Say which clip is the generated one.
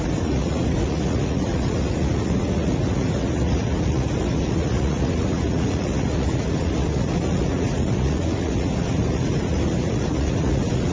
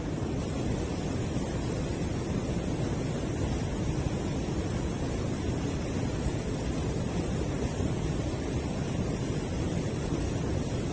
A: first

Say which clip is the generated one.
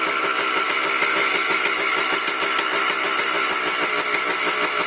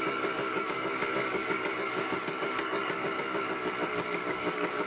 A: second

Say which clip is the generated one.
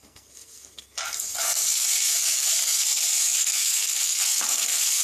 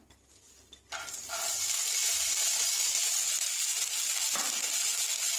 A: first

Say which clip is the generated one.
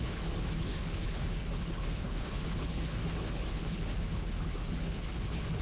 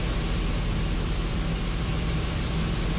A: first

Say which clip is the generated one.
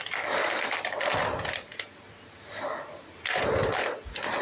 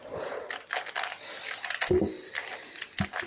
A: second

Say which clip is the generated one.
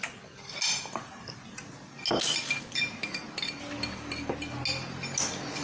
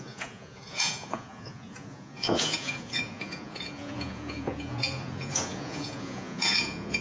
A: second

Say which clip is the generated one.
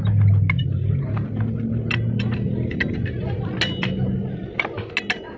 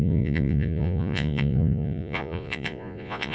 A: second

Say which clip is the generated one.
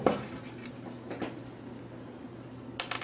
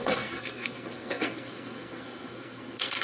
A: second